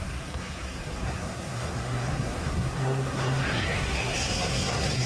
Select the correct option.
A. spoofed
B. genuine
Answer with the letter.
A